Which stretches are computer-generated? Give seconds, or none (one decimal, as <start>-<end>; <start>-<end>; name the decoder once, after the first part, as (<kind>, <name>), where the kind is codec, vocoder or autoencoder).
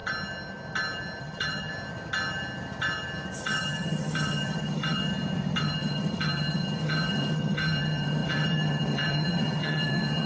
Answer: 1.2-1.7 (vocoder, HiFi-GAN); 3.4-5.1; 5.6-10.3